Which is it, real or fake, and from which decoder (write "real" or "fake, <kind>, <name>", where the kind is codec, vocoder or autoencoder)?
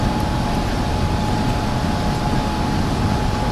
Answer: real